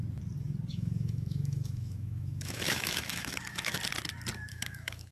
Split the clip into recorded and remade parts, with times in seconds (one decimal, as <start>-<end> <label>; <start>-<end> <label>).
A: 0.0-0.7 recorded; 0.7-3.8 remade; 3.8-4.5 recorded; 4.5-5.1 remade